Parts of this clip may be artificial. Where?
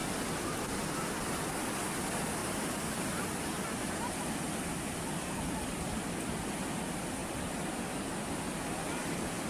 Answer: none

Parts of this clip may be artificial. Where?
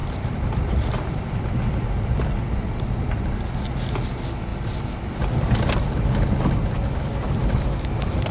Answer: 0.0-1.4 (vocoder, BigVGAN v2)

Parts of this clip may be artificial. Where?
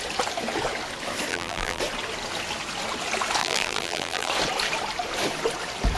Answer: 1.3-1.8 (vocoder, BigVGAN v2); 3.4-4.3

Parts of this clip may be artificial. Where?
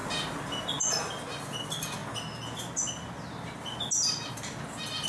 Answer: none